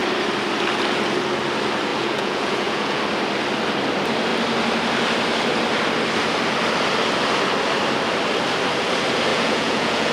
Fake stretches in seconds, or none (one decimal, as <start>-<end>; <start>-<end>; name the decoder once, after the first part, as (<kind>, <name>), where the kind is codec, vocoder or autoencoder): 1.9-3.0 (vocoder, Vocos); 9.3-10.1